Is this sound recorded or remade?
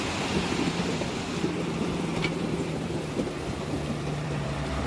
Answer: remade